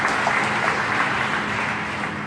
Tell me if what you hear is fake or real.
real